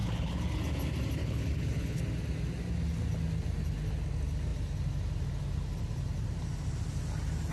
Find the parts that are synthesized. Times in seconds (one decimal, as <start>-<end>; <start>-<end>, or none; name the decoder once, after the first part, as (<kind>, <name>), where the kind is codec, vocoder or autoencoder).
0.0-0.6 (codec, HILCodec); 1.2-2.0